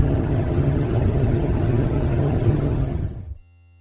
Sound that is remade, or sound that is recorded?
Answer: remade